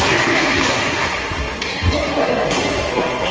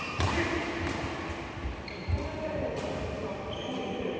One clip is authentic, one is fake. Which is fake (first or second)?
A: first